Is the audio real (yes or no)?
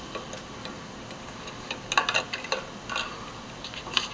yes